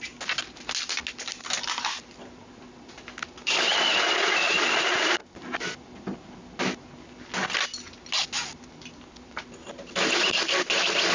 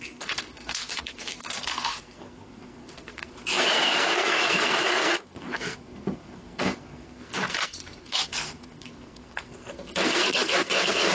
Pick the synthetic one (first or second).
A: second